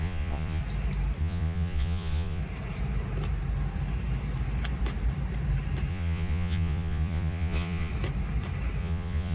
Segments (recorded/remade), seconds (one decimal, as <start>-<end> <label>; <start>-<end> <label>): 0.0-0.6 remade; 0.6-1.2 recorded; 1.2-2.4 remade; 2.4-5.9 recorded; 5.9-7.9 remade; 7.9-8.8 recorded; 8.8-9.3 remade